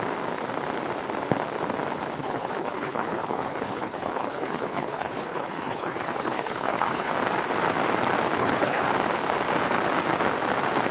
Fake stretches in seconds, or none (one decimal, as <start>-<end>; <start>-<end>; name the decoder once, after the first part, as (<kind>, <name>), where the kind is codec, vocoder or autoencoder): 2.2-7.1 (codec, HILCodec); 8.4-8.9